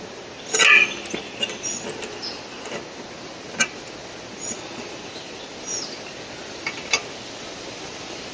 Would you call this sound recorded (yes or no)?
yes